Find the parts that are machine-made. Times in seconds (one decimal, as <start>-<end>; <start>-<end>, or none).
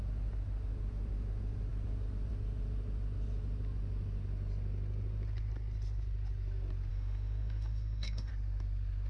6.9-8.3